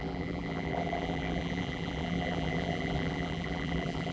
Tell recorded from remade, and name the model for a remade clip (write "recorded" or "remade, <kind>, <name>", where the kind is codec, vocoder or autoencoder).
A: remade, vocoder, BigVGAN v2